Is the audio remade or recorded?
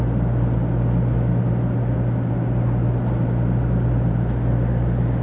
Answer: recorded